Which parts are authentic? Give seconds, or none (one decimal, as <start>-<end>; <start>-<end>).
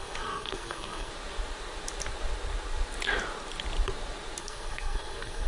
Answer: 1.1-4.4